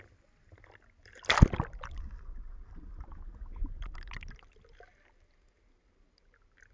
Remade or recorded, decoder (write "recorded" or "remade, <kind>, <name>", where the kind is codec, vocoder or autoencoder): recorded